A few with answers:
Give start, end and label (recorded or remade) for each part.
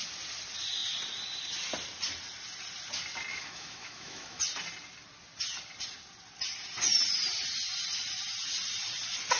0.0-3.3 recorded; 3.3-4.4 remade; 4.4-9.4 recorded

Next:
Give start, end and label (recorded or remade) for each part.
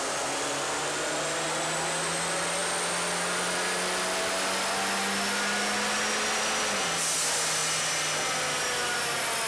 0.0-9.5 recorded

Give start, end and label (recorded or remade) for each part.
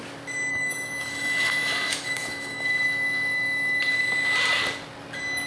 0.0-0.5 recorded; 0.5-3.8 remade; 3.8-5.5 recorded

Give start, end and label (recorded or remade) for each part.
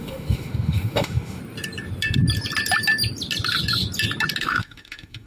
0.0-1.4 remade; 1.4-4.4 recorded; 4.4-5.3 remade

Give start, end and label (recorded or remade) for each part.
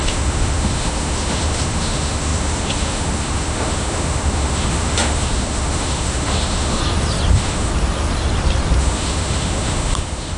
0.0-6.8 remade; 6.8-7.3 recorded; 7.3-7.7 remade; 7.7-8.8 recorded; 8.8-10.4 remade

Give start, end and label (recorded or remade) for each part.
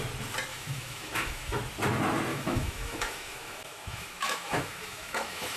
0.0-0.5 recorded; 0.5-1.6 remade; 1.6-2.3 recorded; 2.3-5.6 remade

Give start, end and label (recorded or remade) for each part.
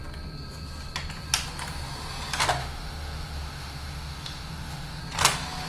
0.0-2.6 recorded; 2.6-5.0 remade; 5.0-5.7 recorded